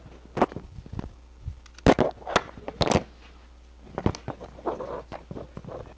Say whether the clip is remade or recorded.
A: recorded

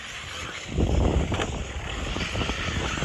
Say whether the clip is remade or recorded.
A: recorded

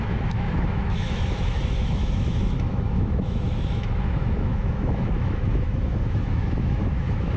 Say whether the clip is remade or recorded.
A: remade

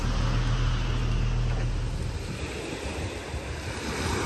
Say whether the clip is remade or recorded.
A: recorded